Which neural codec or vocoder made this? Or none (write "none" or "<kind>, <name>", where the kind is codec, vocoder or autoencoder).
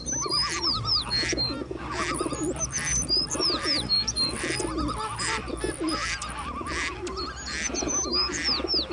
vocoder, BigVGAN v2